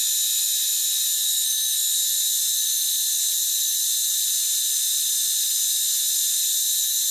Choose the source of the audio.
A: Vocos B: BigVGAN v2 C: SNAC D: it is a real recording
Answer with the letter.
B